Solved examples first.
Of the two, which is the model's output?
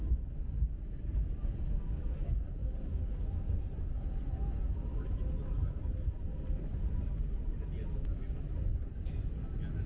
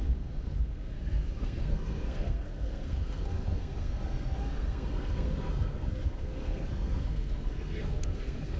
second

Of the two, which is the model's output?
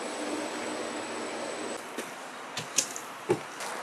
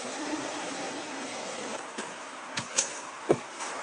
second